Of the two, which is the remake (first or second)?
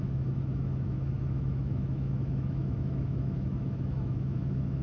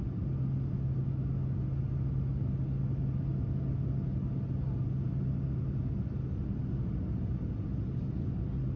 first